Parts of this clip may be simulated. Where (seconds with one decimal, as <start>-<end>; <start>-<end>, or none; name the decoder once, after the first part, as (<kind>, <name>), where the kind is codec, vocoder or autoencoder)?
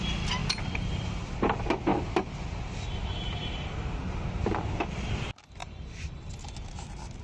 5.6-6.3 (vocoder, BigVGAN v2)